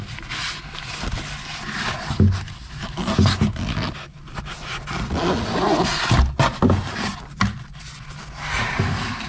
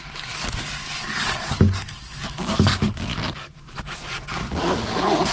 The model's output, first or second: second